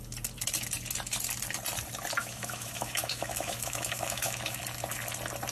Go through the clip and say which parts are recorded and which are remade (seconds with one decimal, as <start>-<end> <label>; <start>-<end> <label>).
0.0-2.2 recorded; 2.2-4.6 remade; 4.6-5.5 recorded